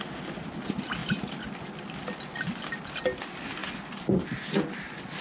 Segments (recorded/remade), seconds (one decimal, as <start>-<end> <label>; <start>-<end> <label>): 0.0-5.2 recorded